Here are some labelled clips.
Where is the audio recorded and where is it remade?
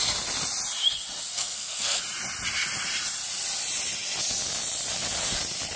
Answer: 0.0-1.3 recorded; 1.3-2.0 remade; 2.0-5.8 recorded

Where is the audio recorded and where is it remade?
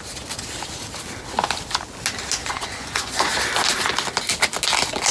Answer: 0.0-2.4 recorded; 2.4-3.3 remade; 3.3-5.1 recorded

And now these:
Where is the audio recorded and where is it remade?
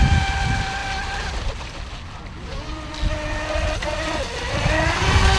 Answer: 0.0-5.4 recorded